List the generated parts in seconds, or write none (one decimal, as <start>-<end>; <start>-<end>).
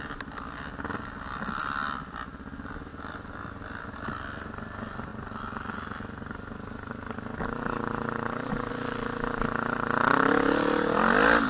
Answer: none